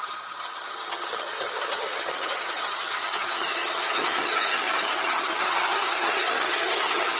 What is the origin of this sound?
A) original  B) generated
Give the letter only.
B